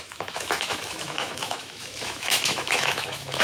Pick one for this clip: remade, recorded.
remade